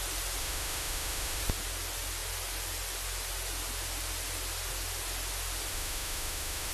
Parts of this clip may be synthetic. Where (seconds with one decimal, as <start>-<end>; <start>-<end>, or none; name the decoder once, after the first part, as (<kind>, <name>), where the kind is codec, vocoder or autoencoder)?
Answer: 0.4-1.4 (autoencoder, DAC-VAE); 5.7-6.7